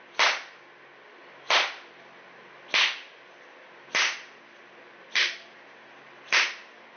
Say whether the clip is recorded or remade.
recorded